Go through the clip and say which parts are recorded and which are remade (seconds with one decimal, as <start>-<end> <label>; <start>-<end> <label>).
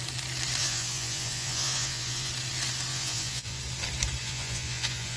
0.0-0.6 recorded; 0.6-2.3 remade; 2.3-2.9 recorded; 2.9-3.6 remade; 3.6-4.2 recorded; 4.2-5.2 remade